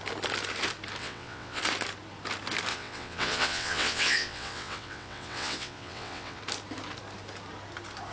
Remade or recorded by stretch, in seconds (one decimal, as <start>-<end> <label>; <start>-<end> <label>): 0.0-1.0 recorded; 1.0-1.6 remade; 1.6-2.7 recorded; 2.7-6.4 remade; 6.4-8.1 recorded